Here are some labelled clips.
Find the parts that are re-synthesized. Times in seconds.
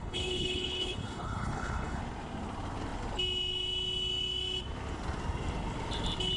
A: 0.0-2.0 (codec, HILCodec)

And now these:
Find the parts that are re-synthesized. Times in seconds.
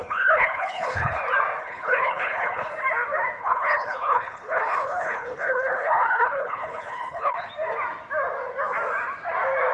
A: 0.0-1.2 (codec, HILCodec); 1.6-2.7; 3.4-7.5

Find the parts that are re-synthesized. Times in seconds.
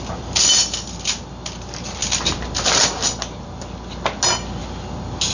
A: none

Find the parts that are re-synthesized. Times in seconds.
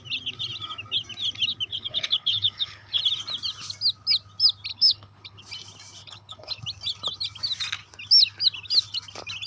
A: 1.7-3.0 (codec, HILCodec); 4.7-5.4; 6.0-6.6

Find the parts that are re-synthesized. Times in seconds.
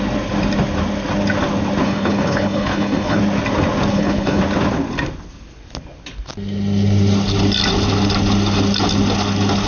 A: 1.8-3.2 (codec, HILCodec); 3.9-4.4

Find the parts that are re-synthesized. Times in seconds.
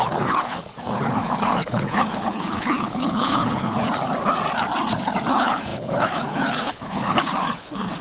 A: 0.0-3.8 (codec, HILCodec); 5.3-8.0